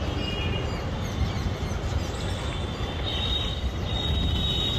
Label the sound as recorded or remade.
recorded